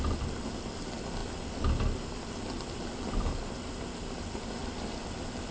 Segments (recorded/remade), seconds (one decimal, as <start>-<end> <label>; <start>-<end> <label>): 0.0-5.5 recorded